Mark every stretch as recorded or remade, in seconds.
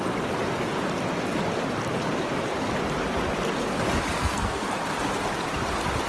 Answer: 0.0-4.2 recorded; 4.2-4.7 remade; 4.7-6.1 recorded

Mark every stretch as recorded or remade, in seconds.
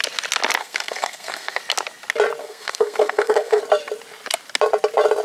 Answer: 0.0-0.6 recorded; 0.6-1.6 remade; 1.6-2.4 recorded; 2.4-3.6 remade; 3.6-5.2 recorded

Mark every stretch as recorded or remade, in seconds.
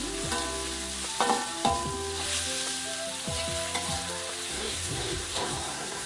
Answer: 0.0-4.5 recorded; 4.5-6.1 remade